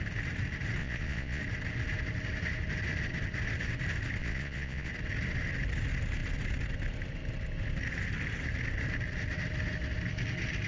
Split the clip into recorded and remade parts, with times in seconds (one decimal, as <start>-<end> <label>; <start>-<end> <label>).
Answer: 0.0-0.8 recorded; 0.8-1.4 remade; 1.4-4.2 recorded; 4.2-4.9 remade; 4.9-10.7 recorded